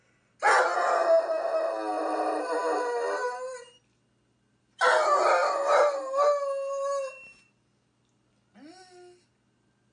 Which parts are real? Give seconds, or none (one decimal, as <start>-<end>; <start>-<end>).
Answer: 0.0-9.9